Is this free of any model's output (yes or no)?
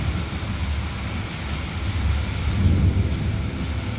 yes